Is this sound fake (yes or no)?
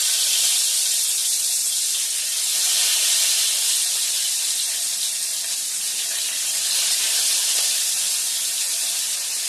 no